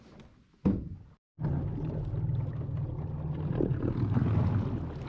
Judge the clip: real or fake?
real